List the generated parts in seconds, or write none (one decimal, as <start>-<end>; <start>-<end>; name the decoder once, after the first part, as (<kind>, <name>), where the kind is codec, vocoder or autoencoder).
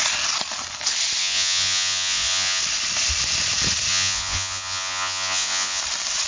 1.2-2.6 (vocoder, Vocos); 3.9-5.8